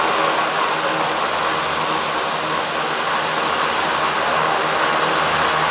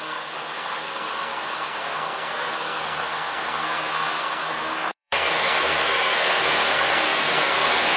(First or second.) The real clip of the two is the first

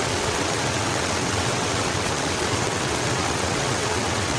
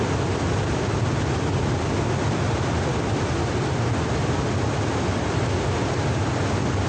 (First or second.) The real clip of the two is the second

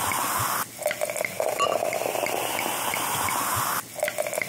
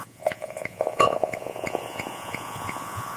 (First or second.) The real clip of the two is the first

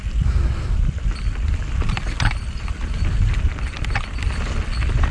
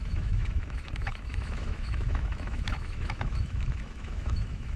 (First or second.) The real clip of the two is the first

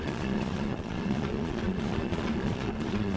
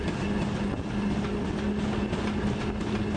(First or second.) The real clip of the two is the second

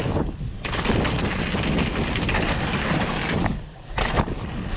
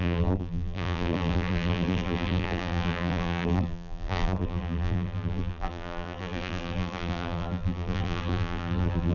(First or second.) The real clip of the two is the first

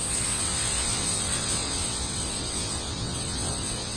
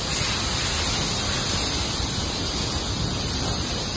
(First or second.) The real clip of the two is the second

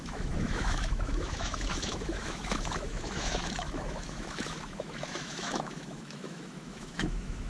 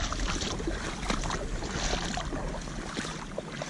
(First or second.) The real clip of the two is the second